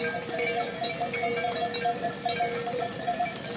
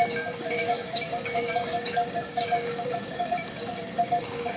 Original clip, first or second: first